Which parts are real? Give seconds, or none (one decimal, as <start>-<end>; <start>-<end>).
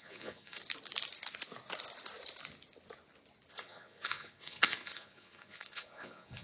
0.6-3.5